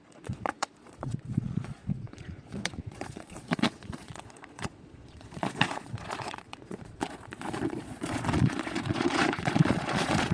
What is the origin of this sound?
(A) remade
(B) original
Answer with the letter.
A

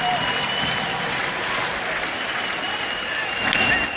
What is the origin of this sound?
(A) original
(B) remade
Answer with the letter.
A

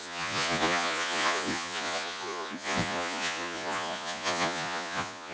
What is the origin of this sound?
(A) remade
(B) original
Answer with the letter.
A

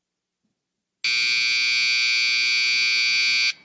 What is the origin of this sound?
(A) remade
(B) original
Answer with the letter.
B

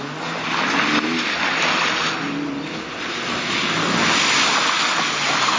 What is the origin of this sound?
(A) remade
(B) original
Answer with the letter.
B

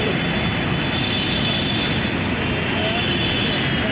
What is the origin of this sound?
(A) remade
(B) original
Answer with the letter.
B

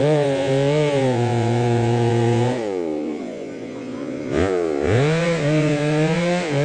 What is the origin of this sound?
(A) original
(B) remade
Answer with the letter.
B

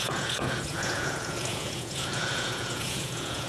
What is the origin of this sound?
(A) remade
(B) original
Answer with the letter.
A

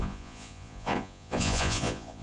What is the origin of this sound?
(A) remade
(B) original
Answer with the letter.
A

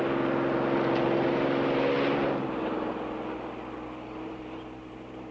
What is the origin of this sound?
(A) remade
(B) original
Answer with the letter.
B